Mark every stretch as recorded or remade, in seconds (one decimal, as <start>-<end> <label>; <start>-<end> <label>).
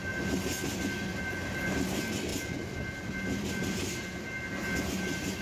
0.0-5.4 recorded